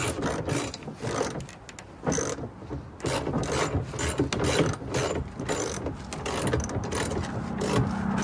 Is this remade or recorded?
recorded